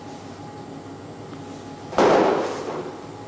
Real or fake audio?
real